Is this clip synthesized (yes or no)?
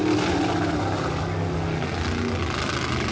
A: no